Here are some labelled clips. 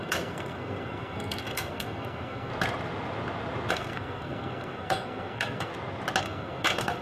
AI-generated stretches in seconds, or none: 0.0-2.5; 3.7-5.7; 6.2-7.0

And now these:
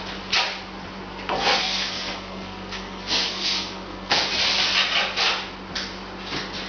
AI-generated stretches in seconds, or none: 1.1-4.3

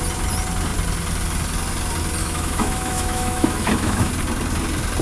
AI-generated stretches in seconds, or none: 2.2-4.1